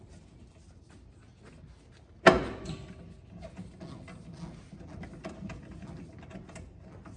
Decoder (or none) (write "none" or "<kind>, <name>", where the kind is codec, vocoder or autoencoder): none